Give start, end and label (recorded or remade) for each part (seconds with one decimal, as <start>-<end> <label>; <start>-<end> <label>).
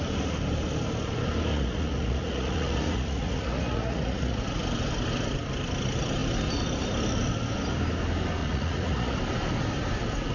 0.0-1.5 recorded; 1.5-4.4 remade; 4.4-8.4 recorded; 8.4-9.2 remade; 9.2-10.3 recorded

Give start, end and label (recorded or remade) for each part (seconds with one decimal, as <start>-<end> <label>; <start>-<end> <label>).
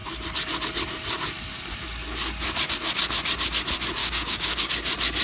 0.0-4.0 recorded; 4.0-4.7 remade; 4.7-5.2 recorded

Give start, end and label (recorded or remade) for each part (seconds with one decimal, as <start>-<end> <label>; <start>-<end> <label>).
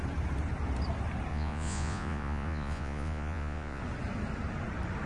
0.0-1.3 recorded; 1.3-3.8 remade; 3.8-5.1 recorded